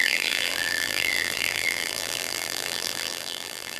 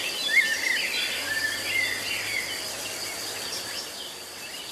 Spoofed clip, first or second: first